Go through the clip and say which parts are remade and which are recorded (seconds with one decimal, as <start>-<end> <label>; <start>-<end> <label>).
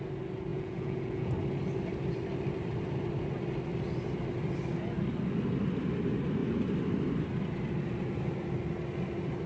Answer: 0.0-0.5 recorded; 0.5-1.3 remade; 1.3-9.5 recorded